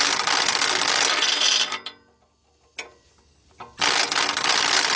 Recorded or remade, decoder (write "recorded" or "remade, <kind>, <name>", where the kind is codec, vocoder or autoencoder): recorded